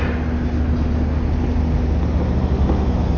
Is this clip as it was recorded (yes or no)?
yes